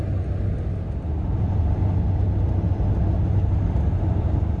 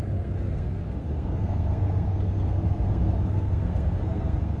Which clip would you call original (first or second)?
first